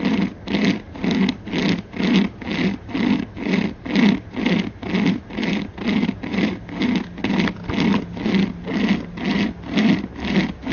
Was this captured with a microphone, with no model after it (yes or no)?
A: yes